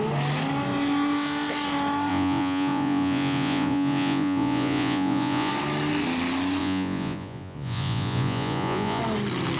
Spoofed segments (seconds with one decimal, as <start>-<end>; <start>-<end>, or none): 2.1-5.5; 6.6-9.0